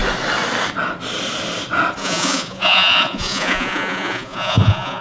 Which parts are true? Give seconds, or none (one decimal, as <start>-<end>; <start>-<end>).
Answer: 0.0-2.0